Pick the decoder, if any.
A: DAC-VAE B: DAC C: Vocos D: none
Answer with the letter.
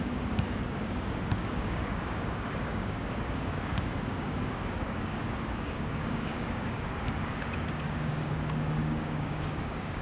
B